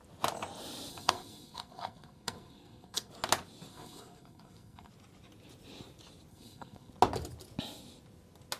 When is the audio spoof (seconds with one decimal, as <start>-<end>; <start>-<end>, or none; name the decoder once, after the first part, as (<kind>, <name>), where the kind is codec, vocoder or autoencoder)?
0.9-3.1 (codec, SNAC); 3.7-4.9; 6.3-6.9